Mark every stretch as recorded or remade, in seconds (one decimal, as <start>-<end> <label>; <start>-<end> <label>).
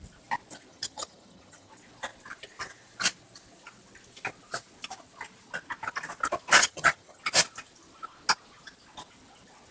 0.0-0.7 recorded; 0.7-1.7 remade; 1.7-6.6 recorded; 6.6-7.2 remade; 7.2-9.7 recorded